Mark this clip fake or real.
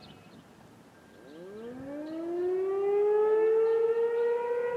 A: real